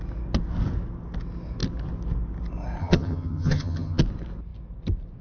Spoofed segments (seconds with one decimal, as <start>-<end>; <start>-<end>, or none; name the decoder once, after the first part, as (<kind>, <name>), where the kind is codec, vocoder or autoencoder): 2.8-4.0 (vocoder, HiFi-GAN)